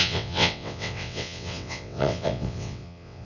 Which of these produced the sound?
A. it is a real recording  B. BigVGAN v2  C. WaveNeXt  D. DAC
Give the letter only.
C